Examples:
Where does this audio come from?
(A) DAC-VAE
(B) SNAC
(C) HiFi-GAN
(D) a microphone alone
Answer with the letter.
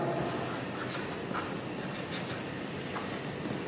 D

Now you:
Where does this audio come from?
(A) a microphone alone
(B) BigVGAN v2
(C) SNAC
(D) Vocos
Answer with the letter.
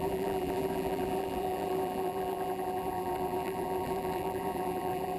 B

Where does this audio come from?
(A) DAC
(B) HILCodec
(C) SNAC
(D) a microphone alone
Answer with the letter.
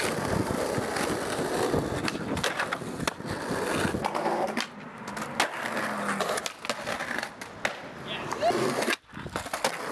D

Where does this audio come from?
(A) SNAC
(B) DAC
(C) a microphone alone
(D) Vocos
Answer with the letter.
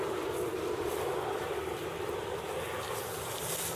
C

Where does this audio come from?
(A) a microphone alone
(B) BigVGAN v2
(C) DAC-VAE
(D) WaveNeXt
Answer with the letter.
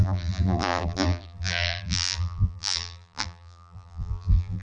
B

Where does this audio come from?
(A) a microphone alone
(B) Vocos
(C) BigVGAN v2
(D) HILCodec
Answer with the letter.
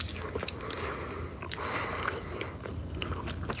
A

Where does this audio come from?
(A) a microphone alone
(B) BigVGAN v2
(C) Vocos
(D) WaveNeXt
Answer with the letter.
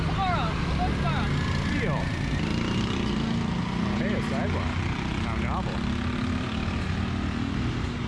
A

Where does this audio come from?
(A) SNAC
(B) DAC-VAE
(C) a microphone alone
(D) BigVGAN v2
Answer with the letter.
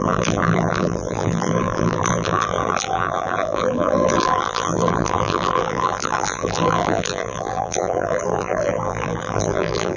D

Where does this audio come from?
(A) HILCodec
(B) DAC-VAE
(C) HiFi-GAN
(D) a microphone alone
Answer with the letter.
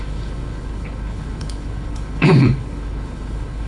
A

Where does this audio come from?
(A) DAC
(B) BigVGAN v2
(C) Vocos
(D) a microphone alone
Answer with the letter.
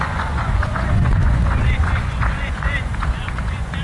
C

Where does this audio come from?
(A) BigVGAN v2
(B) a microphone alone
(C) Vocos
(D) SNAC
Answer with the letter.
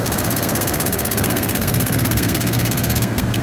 D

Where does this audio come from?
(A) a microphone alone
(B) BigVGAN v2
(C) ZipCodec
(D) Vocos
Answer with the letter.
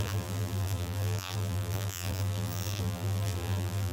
B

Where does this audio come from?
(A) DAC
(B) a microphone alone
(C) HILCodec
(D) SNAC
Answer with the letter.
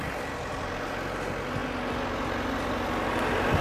B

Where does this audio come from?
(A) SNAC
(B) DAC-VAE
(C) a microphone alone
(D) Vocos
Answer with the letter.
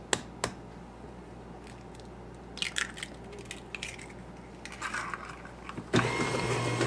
C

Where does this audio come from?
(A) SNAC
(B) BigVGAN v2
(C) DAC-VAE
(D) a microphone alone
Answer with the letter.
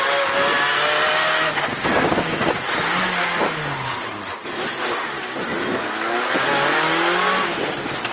D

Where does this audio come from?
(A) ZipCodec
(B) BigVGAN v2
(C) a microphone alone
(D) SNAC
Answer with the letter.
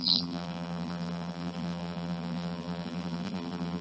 B